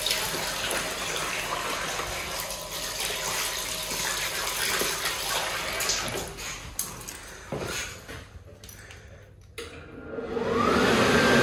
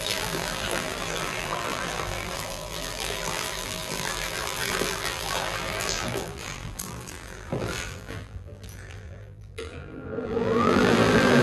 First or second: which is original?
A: first